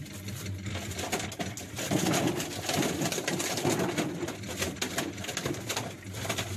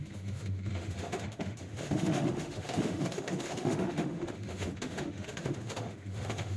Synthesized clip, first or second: second